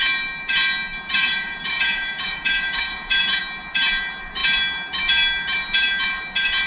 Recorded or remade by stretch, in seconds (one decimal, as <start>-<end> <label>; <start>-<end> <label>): 0.0-1.2 recorded; 1.2-3.4 remade; 3.4-6.7 recorded